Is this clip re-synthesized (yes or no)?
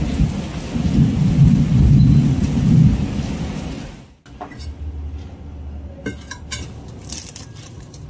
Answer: no